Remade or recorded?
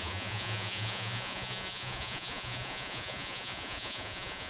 remade